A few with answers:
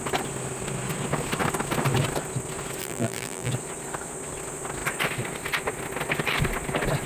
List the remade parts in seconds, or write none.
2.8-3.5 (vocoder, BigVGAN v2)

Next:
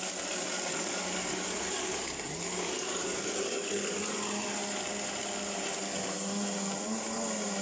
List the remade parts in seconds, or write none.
0.7-4.0 (codec, DAC)

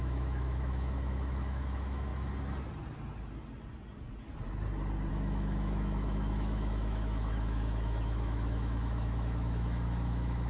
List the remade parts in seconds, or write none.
0.0-2.1 (autoencoder, DAC-VAE); 5.1-10.5

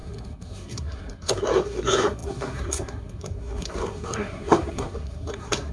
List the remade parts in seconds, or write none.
0.0-5.7 (codec, SNAC)

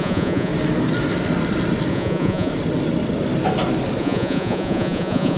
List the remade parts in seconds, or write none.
0.0-0.5 (vocoder, Vocos); 1.9-2.5; 4.0-5.4

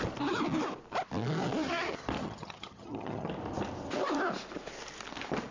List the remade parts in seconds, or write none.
2.2-3.3 (vocoder, HiFi-GAN)

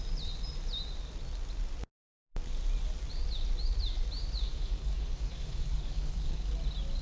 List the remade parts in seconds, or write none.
4.5-6.5 (codec, DAC)